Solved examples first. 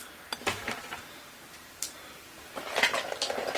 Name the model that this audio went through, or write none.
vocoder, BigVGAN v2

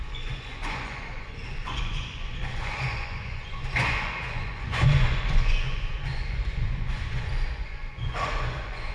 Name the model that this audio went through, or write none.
vocoder, Vocos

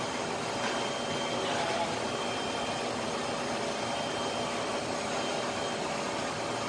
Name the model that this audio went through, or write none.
none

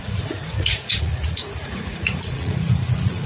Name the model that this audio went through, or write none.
vocoder, Vocos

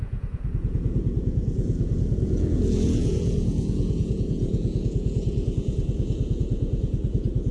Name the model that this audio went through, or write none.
vocoder, Vocos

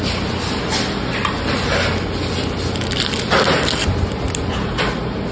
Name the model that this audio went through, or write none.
none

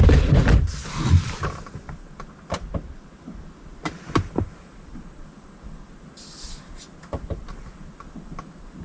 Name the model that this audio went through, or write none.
none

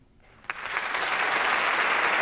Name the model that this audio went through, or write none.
none